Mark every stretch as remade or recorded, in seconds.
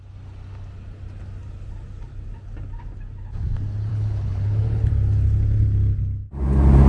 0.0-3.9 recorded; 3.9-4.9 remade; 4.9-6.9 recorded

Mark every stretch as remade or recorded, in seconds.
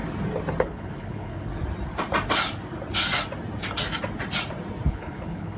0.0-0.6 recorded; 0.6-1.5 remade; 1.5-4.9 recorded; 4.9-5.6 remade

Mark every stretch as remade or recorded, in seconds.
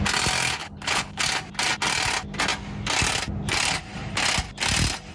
0.0-0.6 recorded; 0.6-1.2 remade; 1.2-5.1 recorded